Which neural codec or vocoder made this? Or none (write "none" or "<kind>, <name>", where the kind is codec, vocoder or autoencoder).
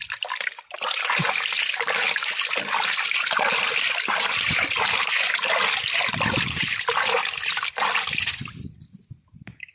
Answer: none